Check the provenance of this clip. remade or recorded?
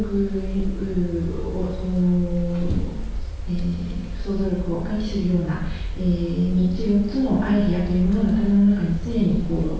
recorded